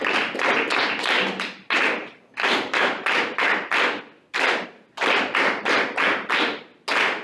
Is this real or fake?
real